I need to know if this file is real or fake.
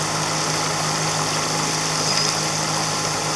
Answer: real